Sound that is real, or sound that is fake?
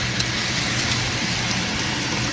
real